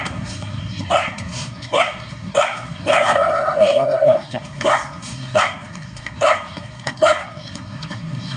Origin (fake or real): fake